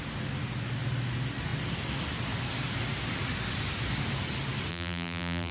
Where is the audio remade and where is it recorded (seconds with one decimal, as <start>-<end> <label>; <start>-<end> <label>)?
0.0-4.7 recorded; 4.7-5.5 remade